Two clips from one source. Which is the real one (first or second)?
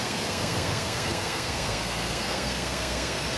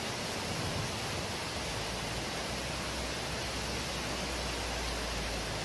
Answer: second